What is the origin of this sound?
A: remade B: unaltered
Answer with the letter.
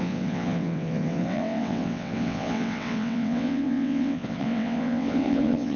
A